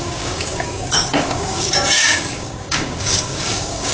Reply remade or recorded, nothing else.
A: remade